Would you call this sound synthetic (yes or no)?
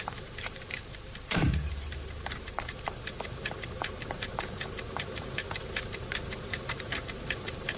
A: yes